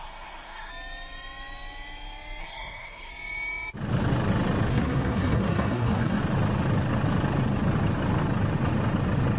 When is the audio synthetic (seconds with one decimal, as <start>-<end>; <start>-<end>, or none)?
0.0-0.7; 2.4-3.1; 4.7-6.2